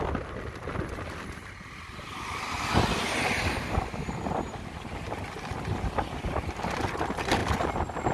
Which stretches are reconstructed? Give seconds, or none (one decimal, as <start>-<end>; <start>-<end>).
none